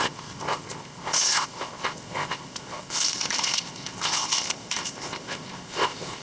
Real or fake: fake